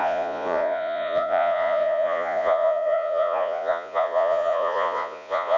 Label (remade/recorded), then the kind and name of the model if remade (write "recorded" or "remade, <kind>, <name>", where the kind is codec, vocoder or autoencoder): remade, vocoder, Vocos